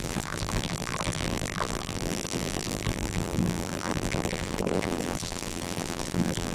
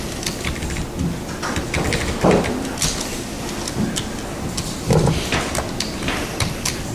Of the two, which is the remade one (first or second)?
first